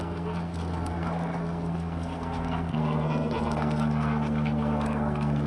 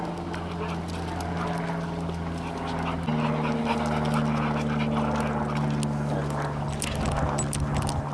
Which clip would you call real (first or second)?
second